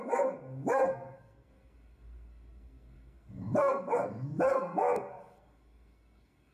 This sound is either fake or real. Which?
fake